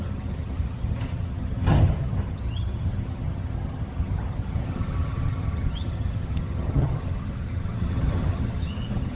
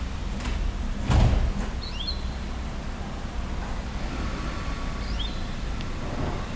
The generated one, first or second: first